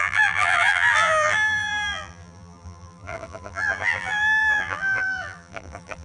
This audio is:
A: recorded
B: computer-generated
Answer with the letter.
B